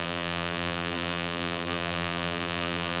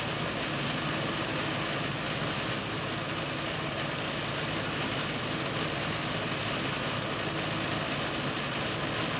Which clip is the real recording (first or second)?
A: second